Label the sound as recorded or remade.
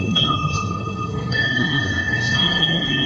remade